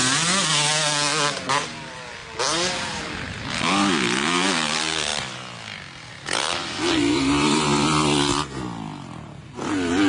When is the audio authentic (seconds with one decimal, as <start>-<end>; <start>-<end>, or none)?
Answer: 0.0-10.1